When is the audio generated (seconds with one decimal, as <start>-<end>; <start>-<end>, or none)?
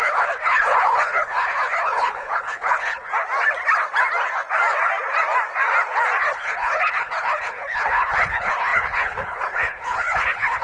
0.0-3.1; 6.2-10.6